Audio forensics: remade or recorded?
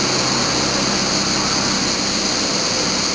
recorded